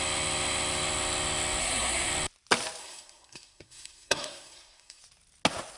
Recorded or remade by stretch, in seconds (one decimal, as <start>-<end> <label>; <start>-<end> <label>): 0.0-1.6 recorded; 1.6-2.1 remade; 2.1-2.8 recorded; 2.8-5.0 remade; 5.0-5.8 recorded